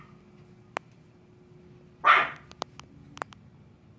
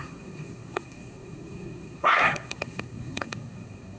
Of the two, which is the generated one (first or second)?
second